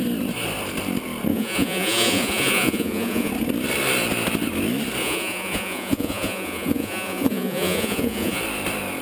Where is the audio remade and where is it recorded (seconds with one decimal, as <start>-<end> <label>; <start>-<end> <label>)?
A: 0.0-1.3 recorded; 1.3-3.3 remade; 3.3-5.0 recorded; 5.0-8.4 remade; 8.4-9.0 recorded